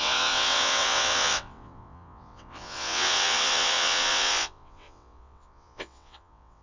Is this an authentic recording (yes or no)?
no